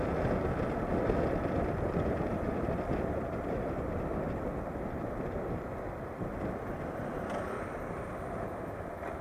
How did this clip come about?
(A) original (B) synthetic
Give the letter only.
A